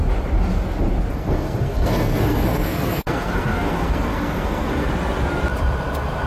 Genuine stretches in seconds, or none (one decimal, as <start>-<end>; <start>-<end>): 0.0-1.1; 4.9-6.3